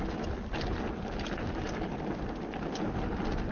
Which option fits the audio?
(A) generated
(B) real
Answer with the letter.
B